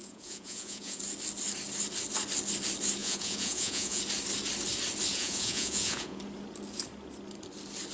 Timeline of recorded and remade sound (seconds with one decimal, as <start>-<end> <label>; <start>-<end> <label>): 0.0-1.0 remade; 1.0-3.0 recorded; 3.0-4.0 remade; 4.0-5.1 recorded; 5.1-6.2 remade; 6.2-7.9 recorded